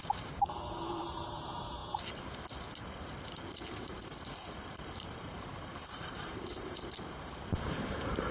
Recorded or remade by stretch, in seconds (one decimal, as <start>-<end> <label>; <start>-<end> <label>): 0.0-1.8 remade; 1.8-3.8 recorded; 3.8-8.3 remade